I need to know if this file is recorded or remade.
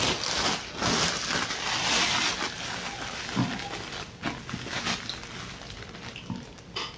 recorded